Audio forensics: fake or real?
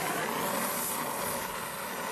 real